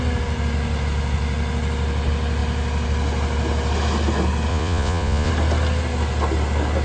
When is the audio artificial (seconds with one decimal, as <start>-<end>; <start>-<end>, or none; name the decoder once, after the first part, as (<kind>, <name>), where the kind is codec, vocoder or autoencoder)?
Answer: 4.5-5.3 (vocoder, Vocos)